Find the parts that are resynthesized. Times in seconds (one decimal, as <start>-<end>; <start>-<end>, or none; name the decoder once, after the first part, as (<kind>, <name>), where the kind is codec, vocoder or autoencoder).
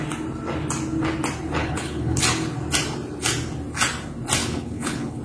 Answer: 1.6-2.2 (codec, HILCodec); 4.4-5.2